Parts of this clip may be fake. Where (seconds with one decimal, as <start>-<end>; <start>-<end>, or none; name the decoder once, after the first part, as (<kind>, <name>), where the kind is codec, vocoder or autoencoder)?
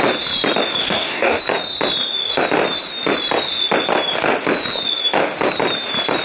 0.8-1.4 (codec, DAC)